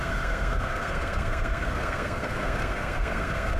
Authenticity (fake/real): fake